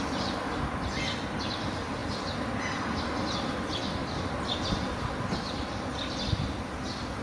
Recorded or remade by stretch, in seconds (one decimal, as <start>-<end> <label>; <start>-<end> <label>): 0.0-7.2 recorded